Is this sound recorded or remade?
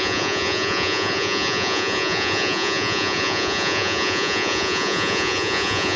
remade